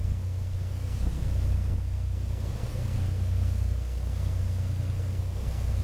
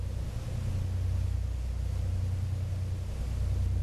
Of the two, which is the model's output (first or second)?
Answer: first